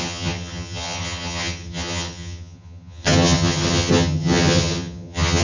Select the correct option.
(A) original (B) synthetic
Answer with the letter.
B